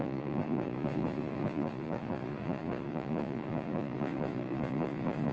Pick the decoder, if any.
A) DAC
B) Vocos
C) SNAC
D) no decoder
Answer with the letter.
B